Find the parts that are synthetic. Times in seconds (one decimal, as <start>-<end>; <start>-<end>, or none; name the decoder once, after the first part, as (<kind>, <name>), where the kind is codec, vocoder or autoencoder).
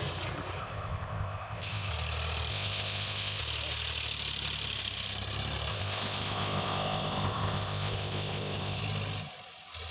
0.6-1.9 (codec, ZipCodec); 2.5-3.4; 5.7-8.8